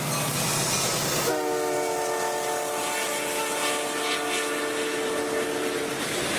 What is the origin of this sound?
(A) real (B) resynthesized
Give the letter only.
A